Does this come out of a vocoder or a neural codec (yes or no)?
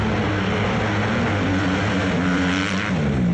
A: no